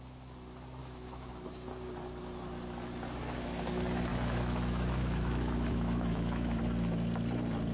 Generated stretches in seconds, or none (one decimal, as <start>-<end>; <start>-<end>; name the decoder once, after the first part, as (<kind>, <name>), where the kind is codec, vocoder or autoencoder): 0.8-1.3 (autoencoder, DAC-VAE); 4.1-6.6